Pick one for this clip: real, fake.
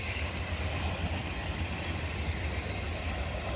real